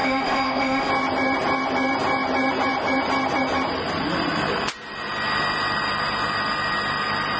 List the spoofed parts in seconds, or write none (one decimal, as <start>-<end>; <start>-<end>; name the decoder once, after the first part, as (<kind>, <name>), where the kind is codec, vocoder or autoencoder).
0.0-0.9 (autoencoder, DAC-VAE)